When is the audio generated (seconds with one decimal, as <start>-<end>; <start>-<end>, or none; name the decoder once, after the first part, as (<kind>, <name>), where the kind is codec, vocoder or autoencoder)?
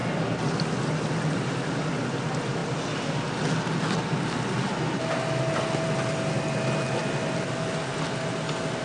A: none